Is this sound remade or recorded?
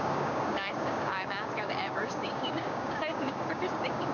remade